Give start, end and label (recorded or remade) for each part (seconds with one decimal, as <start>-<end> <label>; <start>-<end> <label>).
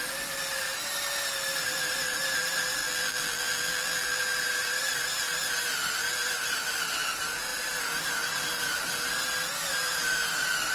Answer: 0.0-2.8 recorded; 2.8-4.2 remade; 4.2-10.7 recorded